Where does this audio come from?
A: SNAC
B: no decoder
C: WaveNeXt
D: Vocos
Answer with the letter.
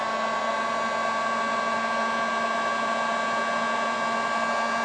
B